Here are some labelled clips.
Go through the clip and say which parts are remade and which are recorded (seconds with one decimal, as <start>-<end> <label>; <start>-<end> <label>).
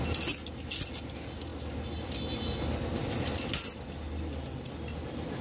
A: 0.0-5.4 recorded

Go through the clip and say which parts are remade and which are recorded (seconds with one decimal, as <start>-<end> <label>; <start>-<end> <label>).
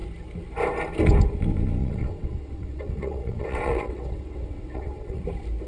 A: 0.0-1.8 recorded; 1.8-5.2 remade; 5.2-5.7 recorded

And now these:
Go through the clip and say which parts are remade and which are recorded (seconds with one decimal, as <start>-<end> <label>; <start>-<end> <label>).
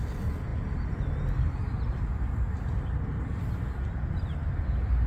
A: 0.0-5.1 recorded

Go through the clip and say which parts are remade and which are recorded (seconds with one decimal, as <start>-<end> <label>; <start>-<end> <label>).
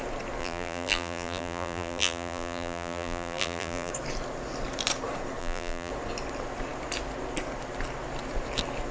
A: 0.0-0.4 recorded; 0.4-3.9 remade; 3.9-5.4 recorded; 5.4-5.9 remade; 5.9-8.9 recorded